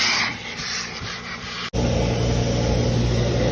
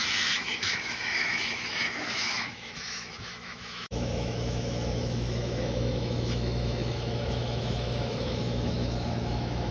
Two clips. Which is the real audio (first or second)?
first